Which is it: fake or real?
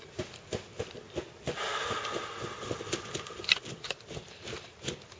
real